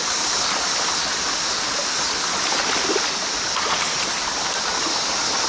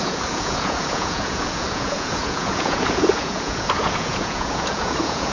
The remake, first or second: second